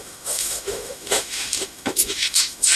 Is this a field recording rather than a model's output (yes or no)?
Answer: no